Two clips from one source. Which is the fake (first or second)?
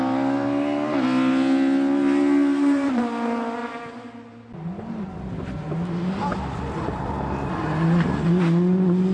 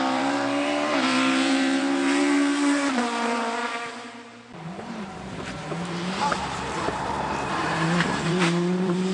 second